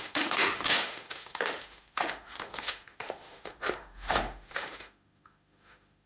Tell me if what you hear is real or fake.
fake